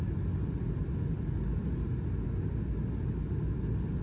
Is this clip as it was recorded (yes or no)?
yes